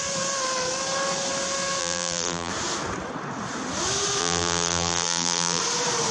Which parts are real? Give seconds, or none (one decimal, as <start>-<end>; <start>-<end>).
0.0-1.8; 2.5-4.2; 5.6-6.1